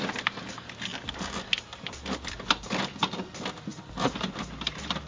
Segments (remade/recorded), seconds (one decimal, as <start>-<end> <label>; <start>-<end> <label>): 0.0-5.1 recorded